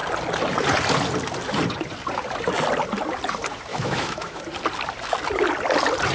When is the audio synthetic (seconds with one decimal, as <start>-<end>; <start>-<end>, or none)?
3.7-4.4